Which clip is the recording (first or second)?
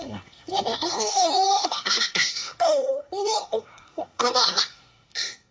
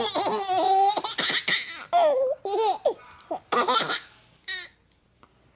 second